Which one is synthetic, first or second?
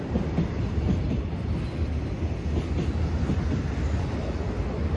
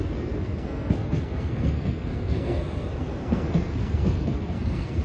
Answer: second